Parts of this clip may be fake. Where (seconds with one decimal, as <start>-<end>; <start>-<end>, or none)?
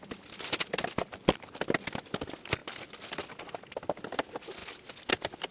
none